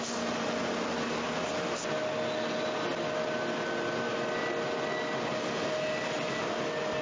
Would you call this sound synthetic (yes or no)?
no